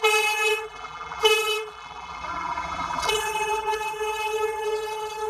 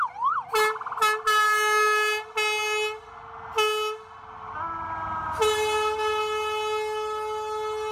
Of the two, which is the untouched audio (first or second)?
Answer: second